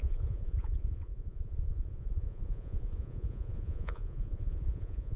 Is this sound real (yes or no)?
no